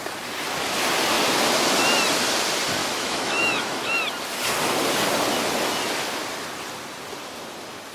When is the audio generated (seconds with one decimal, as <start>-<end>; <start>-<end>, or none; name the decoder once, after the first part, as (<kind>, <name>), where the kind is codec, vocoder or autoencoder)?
2.8-3.9 (autoencoder, DAC-VAE)